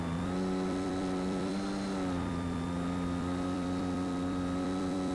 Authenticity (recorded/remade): remade